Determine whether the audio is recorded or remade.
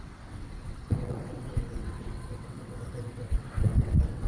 remade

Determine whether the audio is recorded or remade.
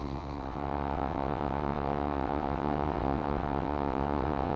remade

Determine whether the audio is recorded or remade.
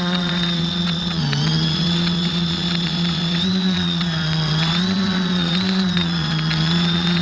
remade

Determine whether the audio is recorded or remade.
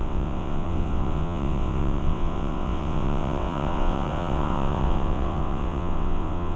remade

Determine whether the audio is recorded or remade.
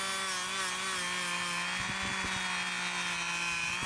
recorded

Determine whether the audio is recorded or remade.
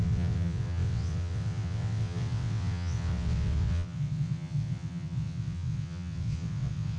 remade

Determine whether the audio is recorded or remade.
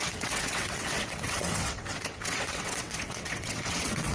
remade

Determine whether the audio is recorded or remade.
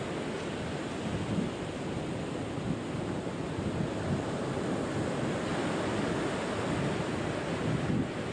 recorded